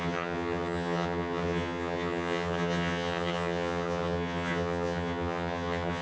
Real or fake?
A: fake